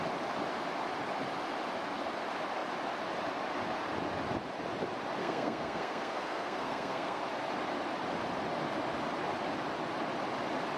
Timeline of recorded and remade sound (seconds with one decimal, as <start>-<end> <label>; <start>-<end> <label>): 0.0-5.2 recorded; 5.2-7.2 remade; 7.2-10.8 recorded